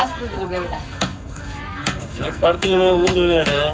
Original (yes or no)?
no